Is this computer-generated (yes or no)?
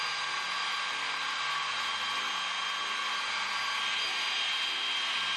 no